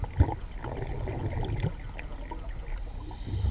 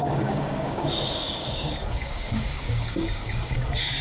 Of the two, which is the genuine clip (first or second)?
first